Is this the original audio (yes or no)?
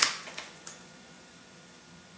no